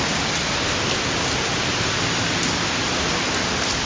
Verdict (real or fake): real